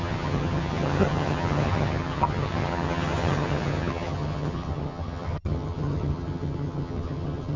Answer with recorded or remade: remade